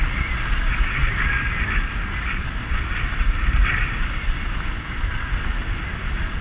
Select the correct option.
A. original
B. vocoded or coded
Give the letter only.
A